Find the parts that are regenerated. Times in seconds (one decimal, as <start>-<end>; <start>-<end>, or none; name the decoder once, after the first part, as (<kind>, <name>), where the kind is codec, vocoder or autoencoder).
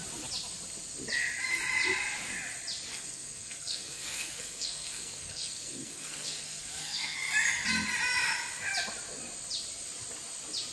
2.9-7.2 (codec, SNAC)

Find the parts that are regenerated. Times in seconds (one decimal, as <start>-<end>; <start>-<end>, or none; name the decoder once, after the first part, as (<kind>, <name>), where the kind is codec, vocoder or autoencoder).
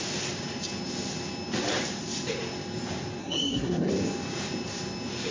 3.2-3.9 (codec, SNAC)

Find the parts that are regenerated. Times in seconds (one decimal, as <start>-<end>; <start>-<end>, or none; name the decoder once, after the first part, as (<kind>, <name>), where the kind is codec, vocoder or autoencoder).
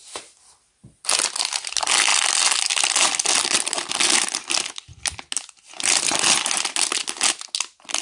none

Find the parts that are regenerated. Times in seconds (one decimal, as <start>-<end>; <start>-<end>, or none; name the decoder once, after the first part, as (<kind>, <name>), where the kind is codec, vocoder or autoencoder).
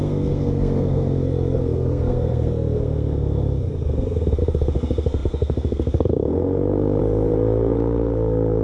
0.0-8.6 (codec, SNAC)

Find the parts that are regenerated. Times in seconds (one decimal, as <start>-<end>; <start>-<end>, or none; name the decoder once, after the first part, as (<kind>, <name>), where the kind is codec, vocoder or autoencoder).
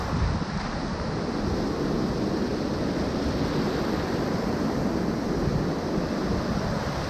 none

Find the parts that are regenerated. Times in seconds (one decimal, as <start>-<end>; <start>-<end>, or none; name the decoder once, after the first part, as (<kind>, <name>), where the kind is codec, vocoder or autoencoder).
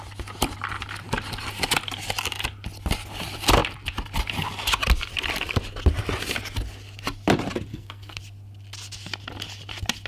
7.7-8.2 (codec, SNAC)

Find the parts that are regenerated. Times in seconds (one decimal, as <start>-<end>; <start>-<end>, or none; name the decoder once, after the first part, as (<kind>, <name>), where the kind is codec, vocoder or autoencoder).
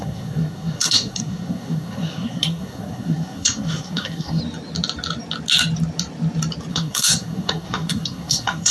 0.0-4.4 (codec, SNAC); 6.7-8.7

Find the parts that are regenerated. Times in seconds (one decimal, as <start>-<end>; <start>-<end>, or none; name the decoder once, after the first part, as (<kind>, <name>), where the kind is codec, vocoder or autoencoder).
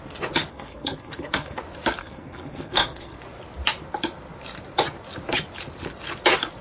0.5-1.6 (codec, SNAC); 2.0-3.2